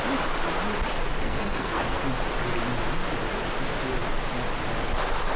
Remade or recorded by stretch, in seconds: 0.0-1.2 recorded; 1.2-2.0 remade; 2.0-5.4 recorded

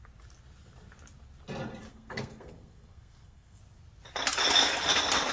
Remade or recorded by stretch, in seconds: 0.0-1.9 recorded; 1.9-3.6 remade; 3.6-5.3 recorded

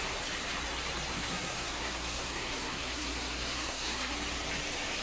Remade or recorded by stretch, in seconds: 0.0-1.1 recorded; 1.1-4.1 remade; 4.1-5.0 recorded

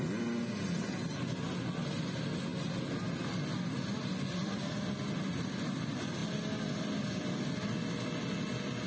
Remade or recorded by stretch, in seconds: 0.0-8.9 recorded

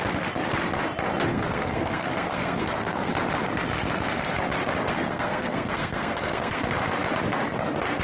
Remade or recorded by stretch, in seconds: 0.0-1.3 recorded; 1.3-3.1 remade; 3.1-4.9 recorded; 4.9-6.6 remade; 6.6-8.0 recorded

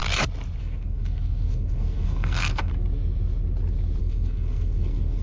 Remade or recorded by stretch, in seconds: 0.0-0.6 recorded; 0.6-2.7 remade; 2.7-4.0 recorded; 4.0-5.2 remade

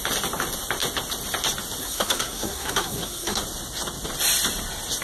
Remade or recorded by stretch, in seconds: 0.0-1.8 recorded; 1.8-3.4 remade; 3.4-5.0 recorded